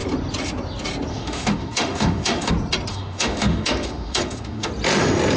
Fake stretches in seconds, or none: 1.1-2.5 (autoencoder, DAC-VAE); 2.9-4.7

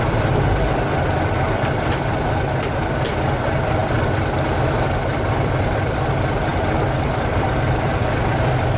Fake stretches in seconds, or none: 0.0-8.8 (vocoder, BigVGAN v2)

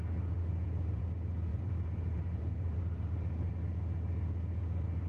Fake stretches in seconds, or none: 0.4-1.0 (vocoder, BigVGAN v2); 1.5-3.5

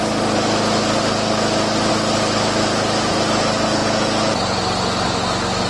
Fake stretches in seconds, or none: 3.8-4.6 (vocoder, Vocos)

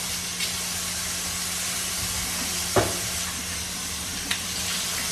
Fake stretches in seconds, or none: none

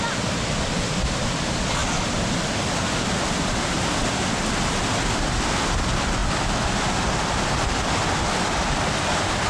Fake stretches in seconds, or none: none